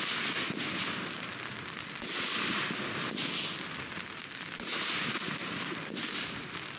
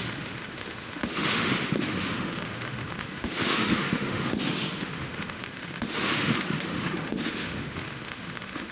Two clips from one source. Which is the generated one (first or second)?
second